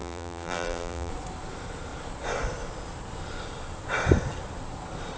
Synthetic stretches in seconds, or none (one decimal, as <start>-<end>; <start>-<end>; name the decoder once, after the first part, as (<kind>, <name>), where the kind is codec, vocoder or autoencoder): 0.0-1.1 (vocoder, BigVGAN v2)